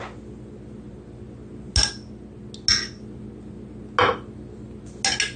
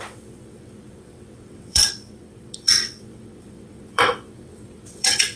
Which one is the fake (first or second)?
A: second